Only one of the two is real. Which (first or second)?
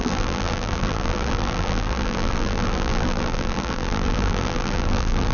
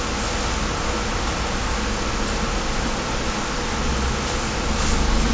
second